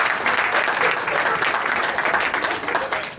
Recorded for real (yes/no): yes